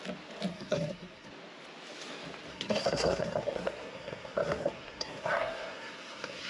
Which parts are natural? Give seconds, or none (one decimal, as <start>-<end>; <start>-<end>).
0.0-0.5; 1.3-2.5